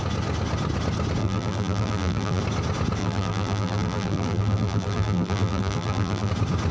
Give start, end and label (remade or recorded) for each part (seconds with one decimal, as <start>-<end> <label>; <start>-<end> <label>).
0.0-1.2 recorded; 1.2-2.4 remade; 2.4-3.0 recorded; 3.0-6.3 remade; 6.3-6.7 recorded